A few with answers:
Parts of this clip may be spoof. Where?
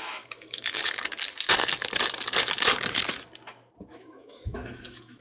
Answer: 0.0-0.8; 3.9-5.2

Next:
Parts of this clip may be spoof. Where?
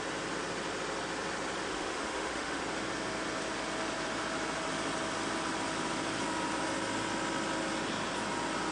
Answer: 1.7-2.6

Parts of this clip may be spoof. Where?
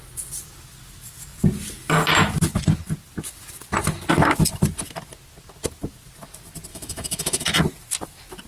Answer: 6.7-7.6